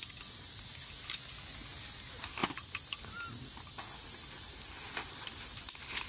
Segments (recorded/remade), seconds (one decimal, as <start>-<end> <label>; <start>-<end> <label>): 0.0-2.4 recorded; 2.4-3.0 remade; 3.0-4.0 recorded; 4.0-6.1 remade